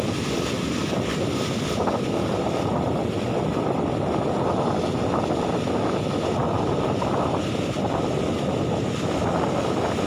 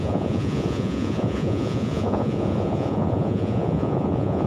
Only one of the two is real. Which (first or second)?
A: first